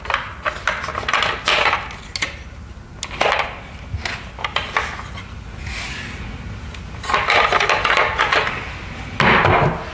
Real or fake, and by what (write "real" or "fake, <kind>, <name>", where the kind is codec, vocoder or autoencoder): real